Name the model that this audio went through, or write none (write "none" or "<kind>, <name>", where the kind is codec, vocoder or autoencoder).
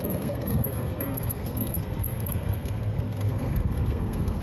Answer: codec, SNAC